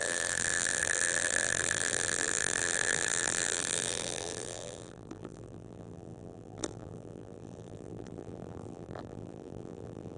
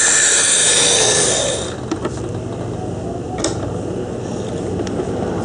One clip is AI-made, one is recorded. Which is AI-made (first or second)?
first